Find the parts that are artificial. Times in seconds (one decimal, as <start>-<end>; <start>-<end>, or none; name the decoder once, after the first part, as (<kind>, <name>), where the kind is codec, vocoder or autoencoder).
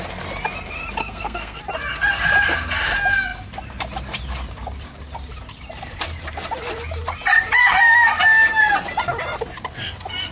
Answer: 1.0-1.6 (codec, SNAC); 7.6-8.2